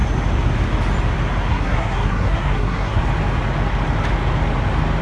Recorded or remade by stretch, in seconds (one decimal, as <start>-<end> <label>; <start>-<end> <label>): 0.0-1.5 recorded; 1.5-3.0 remade; 3.0-5.0 recorded